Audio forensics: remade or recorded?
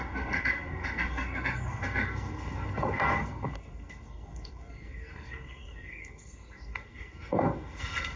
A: remade